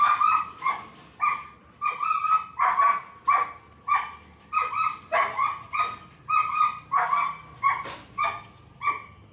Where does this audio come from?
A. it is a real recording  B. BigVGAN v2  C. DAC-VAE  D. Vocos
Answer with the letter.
A